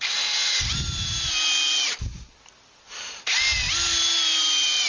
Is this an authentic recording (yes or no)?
yes